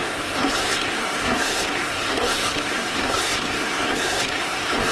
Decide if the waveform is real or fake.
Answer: fake